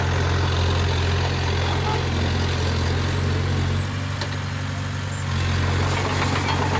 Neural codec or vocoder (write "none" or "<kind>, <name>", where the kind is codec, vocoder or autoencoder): none